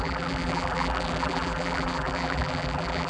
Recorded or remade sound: remade